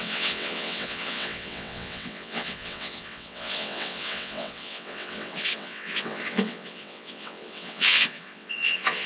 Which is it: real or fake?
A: fake